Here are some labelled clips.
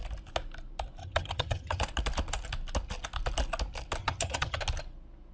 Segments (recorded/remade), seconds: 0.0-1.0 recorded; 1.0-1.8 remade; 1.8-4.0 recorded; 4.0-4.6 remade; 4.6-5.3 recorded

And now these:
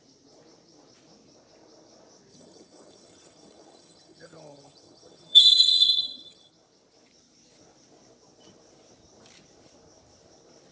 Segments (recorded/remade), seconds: 0.0-2.3 recorded; 2.3-6.5 remade; 6.5-10.7 recorded

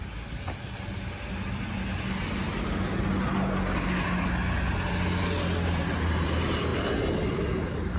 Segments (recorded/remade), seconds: 0.0-8.0 recorded

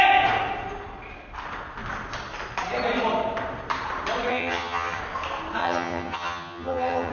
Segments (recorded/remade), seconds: 0.0-4.3 recorded; 4.3-5.0 remade; 5.0-5.6 recorded; 5.6-7.1 remade

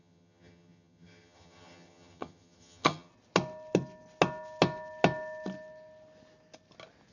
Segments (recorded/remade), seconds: 0.0-3.1 remade; 3.1-7.1 recorded

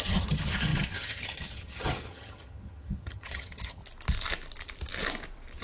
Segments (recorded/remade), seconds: 0.0-3.8 remade; 3.8-5.6 recorded

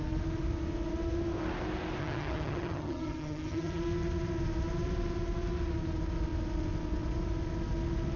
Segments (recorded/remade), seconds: 0.0-2.0 recorded; 2.0-3.8 remade; 3.8-8.2 recorded

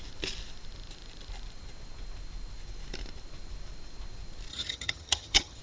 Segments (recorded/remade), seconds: 0.0-4.5 recorded; 4.5-5.6 remade